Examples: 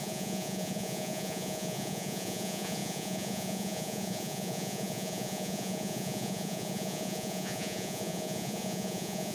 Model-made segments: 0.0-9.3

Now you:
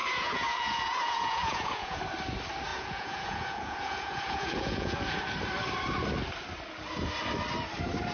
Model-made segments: 0.0-2.0; 2.7-5.2

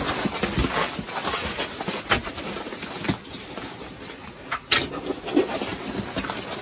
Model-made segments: 1.4-2.9; 4.2-4.9

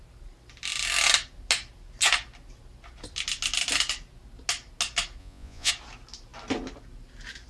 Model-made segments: 5.2-5.7